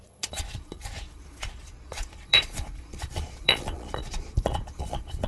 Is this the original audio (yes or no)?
no